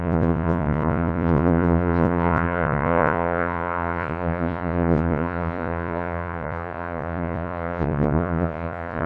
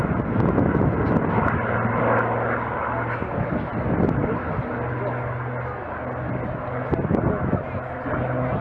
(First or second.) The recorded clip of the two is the second